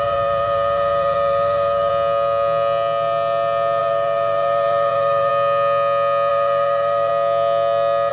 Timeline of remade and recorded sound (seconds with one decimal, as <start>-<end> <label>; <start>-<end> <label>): 0.0-1.9 remade; 1.9-3.8 recorded; 3.8-5.3 remade; 5.3-6.3 recorded; 6.3-7.1 remade; 7.1-8.1 recorded